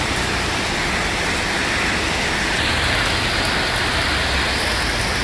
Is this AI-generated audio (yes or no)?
no